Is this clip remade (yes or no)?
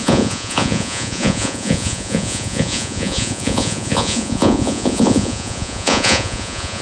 yes